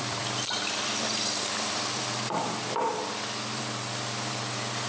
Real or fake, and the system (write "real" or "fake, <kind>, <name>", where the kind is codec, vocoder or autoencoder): fake, vocoder, BigVGAN v2